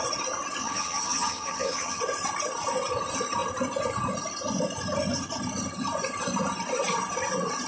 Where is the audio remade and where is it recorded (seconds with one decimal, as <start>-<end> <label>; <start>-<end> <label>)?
0.0-0.6 recorded; 0.6-2.0 remade; 2.0-7.7 recorded